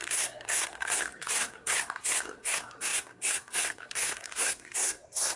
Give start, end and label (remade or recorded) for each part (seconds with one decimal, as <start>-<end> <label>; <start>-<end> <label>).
0.0-5.4 remade